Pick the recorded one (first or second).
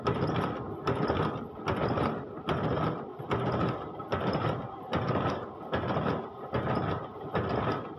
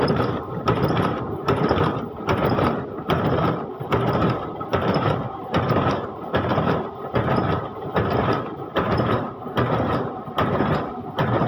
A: first